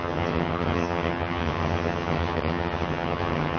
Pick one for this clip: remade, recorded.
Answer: remade